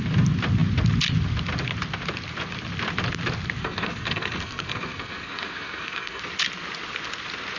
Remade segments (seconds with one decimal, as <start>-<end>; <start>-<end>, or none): 3.6-6.2

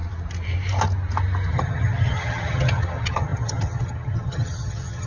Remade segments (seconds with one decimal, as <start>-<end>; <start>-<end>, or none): 1.5-5.1

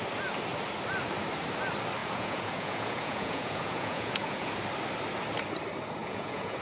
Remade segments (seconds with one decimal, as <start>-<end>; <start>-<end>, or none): 2.0-4.5; 6.0-6.6

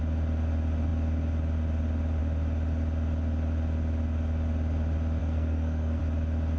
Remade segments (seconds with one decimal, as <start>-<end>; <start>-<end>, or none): 5.2-6.0

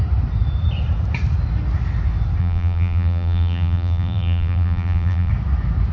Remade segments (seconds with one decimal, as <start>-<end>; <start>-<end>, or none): 2.4-5.3